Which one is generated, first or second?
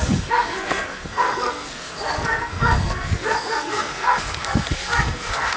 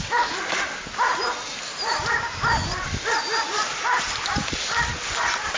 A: first